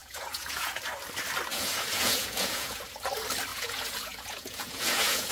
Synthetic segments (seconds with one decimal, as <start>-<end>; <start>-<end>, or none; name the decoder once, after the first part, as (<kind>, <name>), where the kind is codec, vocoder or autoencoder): 0.0-0.8 (vocoder, Vocos); 1.5-2.9; 3.5-5.3